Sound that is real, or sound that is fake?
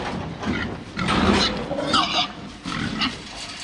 real